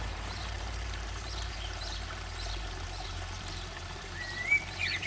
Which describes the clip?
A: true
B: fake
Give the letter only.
B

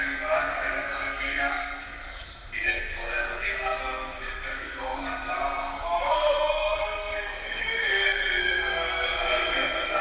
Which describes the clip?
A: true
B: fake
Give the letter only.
B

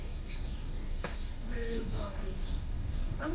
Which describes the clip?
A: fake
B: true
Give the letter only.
A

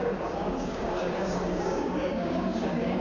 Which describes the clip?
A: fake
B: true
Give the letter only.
A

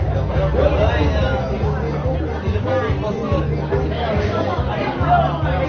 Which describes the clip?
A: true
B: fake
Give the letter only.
A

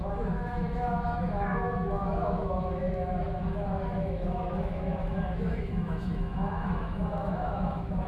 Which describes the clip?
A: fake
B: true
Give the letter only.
A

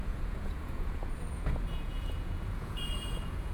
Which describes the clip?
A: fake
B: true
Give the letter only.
A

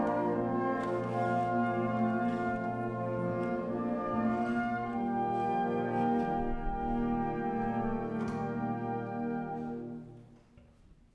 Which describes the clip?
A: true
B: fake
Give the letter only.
A